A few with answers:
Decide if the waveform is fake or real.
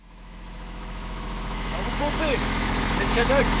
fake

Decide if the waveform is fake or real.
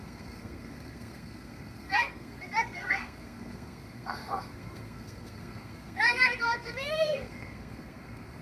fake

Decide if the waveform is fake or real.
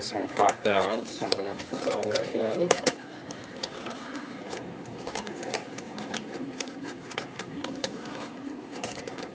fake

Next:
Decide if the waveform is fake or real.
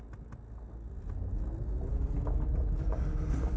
real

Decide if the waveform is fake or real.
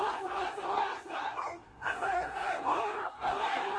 fake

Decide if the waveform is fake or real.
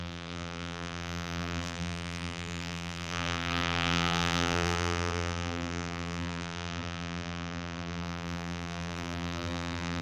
fake